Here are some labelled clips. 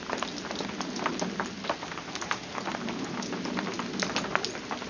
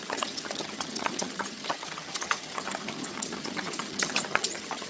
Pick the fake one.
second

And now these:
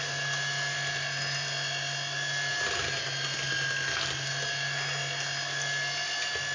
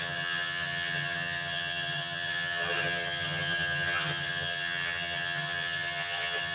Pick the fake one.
second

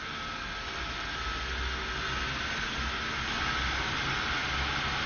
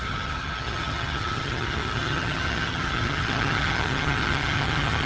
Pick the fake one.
second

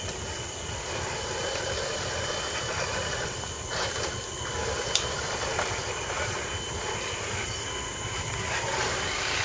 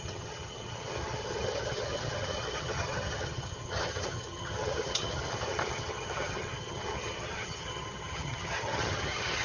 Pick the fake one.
second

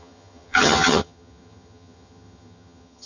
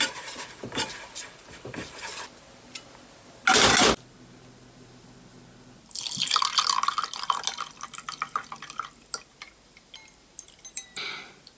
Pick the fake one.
first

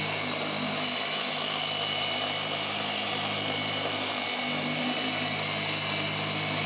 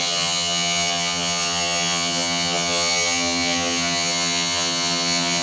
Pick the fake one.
second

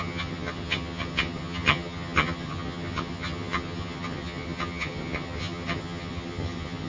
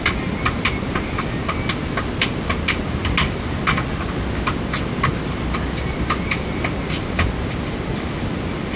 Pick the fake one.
first